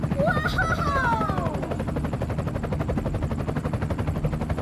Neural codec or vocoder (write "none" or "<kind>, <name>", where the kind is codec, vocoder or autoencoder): none